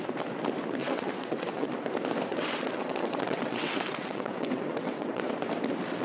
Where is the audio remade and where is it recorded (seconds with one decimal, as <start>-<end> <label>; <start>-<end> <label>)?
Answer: 0.0-0.8 recorded; 0.8-1.7 remade; 1.7-2.3 recorded; 2.3-5.3 remade; 5.3-6.0 recorded